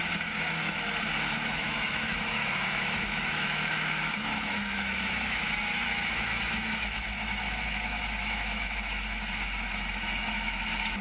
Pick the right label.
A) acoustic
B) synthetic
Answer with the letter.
B